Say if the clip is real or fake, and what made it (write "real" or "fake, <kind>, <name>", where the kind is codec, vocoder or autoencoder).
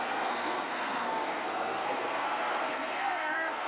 fake, codec, SNAC